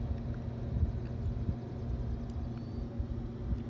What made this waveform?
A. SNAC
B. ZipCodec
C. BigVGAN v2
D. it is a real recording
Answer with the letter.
D